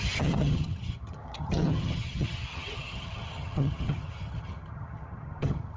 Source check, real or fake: fake